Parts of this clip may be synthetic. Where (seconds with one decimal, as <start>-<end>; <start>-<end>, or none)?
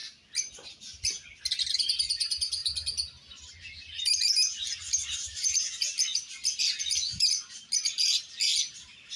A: none